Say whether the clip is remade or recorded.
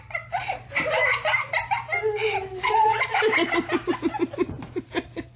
recorded